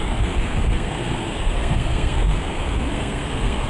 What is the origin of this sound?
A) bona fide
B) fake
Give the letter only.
B